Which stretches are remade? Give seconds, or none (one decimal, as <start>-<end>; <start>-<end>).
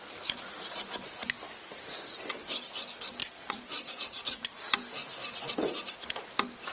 3.2-4.5